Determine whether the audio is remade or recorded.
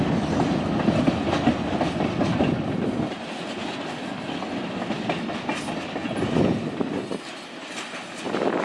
recorded